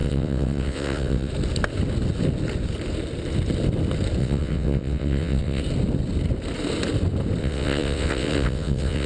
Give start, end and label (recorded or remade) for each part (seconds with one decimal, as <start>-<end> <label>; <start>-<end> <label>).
0.0-1.3 remade; 1.3-4.2 recorded; 4.2-5.6 remade; 5.6-7.4 recorded; 7.4-9.1 remade